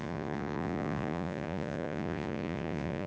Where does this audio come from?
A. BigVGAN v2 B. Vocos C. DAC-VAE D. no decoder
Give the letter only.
B